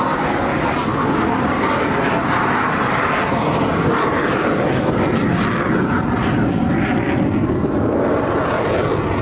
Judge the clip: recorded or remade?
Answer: recorded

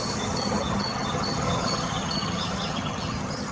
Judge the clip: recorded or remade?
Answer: remade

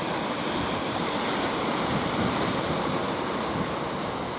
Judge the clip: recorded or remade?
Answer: recorded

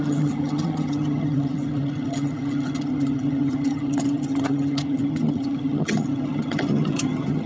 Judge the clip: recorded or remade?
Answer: remade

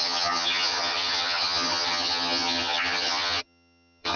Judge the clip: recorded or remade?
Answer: remade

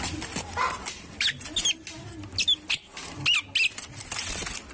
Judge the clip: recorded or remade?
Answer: recorded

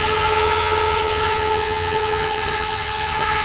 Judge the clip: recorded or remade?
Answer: remade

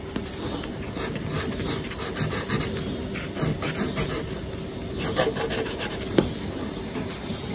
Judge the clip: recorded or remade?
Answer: recorded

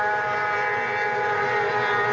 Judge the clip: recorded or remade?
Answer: recorded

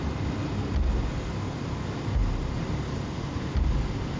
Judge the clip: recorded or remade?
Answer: recorded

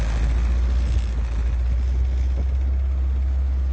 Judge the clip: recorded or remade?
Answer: recorded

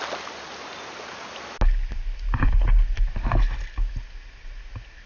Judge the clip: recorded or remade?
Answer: recorded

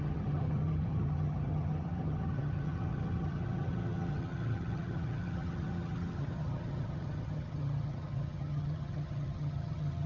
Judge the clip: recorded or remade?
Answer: remade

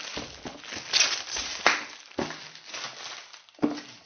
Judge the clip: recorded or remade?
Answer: recorded